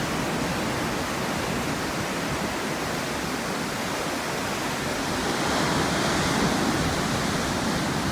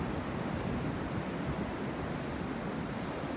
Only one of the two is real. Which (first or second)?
first